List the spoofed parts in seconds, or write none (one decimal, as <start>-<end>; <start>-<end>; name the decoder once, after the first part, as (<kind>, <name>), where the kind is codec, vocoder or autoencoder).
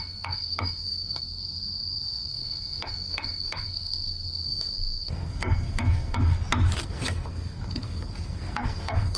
0.0-6.3 (codec, SNAC); 6.8-9.2